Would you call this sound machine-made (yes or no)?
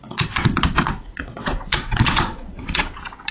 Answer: yes